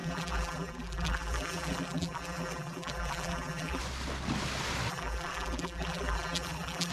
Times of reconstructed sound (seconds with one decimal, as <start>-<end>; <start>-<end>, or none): 0.0-3.8; 4.9-6.9